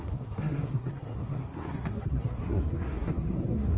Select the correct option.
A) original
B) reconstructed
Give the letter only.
B